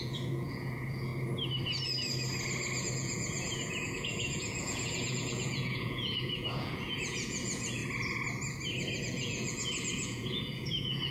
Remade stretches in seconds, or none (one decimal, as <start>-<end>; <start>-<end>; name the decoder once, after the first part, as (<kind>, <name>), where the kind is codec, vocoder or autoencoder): 0.0-1.1 (vocoder, Vocos); 2.8-7.8; 9.0-11.1